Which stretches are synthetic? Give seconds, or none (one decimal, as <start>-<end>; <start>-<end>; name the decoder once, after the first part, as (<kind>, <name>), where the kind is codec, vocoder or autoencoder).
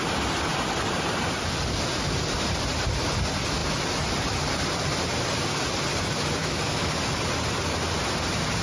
6.4-6.9 (autoencoder, DAC-VAE)